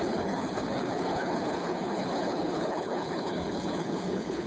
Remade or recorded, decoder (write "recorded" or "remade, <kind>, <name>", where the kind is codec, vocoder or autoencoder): remade, codec, HILCodec